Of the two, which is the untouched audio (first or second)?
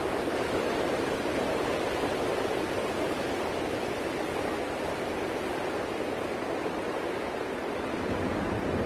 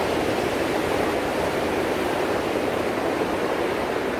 first